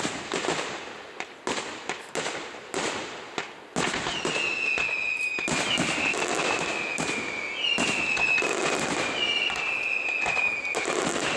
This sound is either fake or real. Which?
real